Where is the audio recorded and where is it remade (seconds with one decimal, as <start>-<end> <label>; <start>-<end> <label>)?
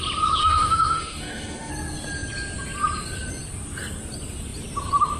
0.0-0.4 recorded; 0.4-1.7 remade; 1.7-5.2 recorded